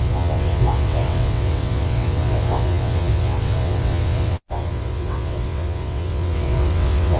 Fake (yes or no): yes